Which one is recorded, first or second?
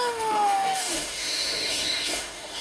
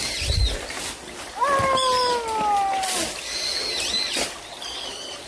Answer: second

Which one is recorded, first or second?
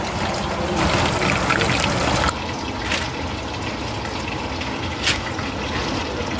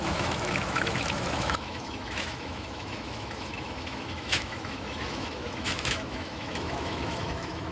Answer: first